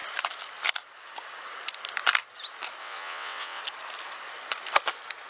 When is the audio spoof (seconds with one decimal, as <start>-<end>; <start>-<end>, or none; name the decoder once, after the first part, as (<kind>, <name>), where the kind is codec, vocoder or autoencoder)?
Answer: 2.8-3.6 (vocoder, WaveNeXt)